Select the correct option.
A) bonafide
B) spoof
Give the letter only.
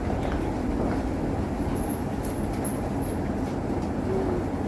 A